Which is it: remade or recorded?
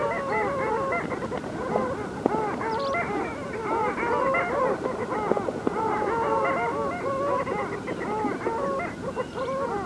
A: recorded